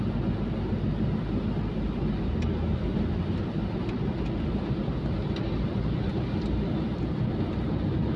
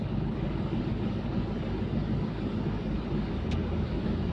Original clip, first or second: first